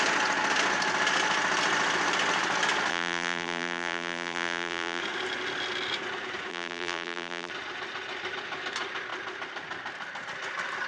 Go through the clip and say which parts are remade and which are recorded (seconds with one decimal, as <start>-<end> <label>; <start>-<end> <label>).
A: 0.0-2.9 recorded; 2.9-5.0 remade; 5.0-6.5 recorded; 6.5-7.5 remade; 7.5-10.9 recorded